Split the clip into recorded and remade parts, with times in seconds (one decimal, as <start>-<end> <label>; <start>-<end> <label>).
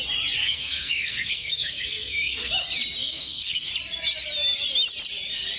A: 0.0-0.4 recorded; 0.4-2.5 remade; 2.5-3.0 recorded; 3.0-3.7 remade; 3.7-5.6 recorded